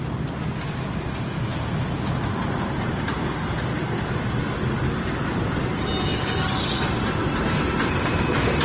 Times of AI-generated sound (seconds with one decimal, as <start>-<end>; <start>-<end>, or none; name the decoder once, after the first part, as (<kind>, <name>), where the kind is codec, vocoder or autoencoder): none